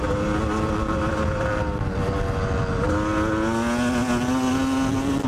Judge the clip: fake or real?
real